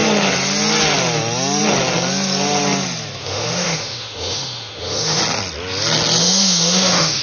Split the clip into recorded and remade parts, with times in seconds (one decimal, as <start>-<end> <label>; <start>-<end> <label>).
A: 0.0-3.2 recorded; 3.2-5.2 remade; 5.2-6.2 recorded; 6.2-7.2 remade